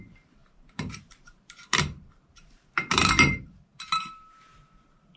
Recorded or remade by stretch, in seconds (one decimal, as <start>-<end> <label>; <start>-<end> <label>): 0.0-5.2 remade